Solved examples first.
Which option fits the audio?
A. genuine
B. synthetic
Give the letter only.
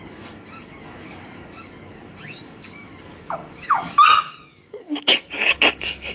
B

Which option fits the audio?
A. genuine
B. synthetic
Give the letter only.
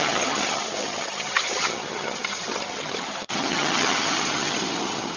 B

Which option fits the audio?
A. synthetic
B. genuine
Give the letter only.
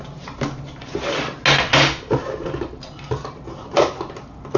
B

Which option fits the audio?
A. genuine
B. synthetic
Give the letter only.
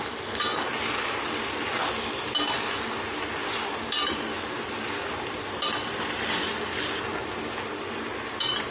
A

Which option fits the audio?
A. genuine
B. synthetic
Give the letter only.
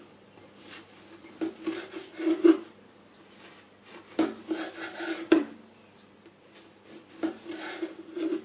A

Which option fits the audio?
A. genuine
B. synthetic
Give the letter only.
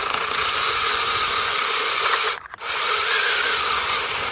B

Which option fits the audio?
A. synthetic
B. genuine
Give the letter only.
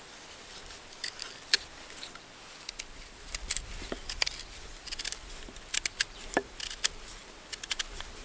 B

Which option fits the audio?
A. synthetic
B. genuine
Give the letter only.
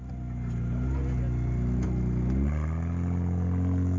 B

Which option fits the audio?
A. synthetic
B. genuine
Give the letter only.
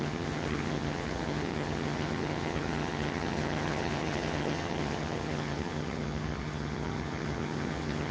A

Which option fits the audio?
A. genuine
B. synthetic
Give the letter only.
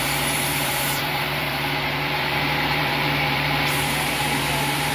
B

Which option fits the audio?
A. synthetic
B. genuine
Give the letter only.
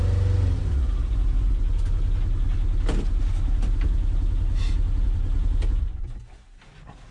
B